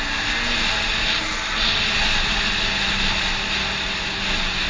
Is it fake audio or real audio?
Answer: real